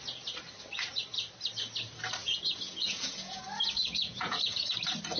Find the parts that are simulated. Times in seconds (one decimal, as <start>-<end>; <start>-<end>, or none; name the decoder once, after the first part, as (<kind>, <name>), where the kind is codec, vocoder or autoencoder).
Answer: 2.2-3.4 (vocoder, Vocos); 3.8-4.7